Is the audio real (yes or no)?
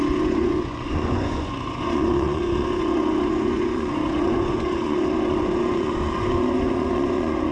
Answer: no